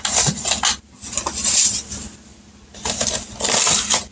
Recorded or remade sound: remade